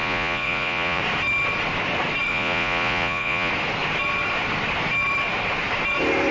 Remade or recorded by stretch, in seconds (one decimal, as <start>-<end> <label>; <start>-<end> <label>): 0.0-1.0 remade; 1.0-2.3 recorded; 2.3-3.5 remade; 3.5-6.3 recorded